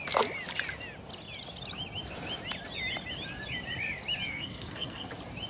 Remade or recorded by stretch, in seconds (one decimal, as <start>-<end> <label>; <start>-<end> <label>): 0.0-4.3 recorded; 4.3-5.1 remade; 5.1-5.5 recorded